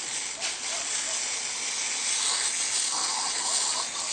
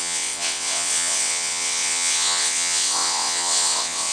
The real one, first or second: first